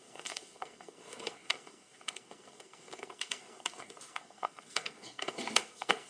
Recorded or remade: remade